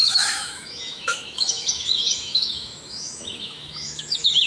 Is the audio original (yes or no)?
no